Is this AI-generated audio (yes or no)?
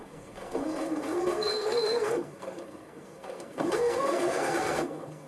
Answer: yes